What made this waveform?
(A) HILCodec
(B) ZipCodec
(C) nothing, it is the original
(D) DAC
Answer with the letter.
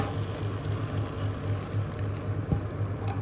C